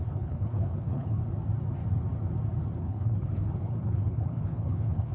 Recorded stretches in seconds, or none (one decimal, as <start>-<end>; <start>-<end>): 1.2-2.8